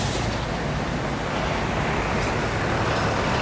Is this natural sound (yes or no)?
yes